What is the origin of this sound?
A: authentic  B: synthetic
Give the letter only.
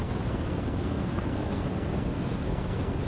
B